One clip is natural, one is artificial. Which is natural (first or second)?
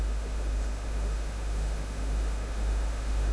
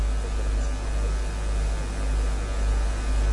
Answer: second